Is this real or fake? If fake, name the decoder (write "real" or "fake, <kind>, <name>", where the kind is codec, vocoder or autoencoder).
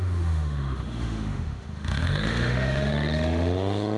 fake, autoencoder, DAC-VAE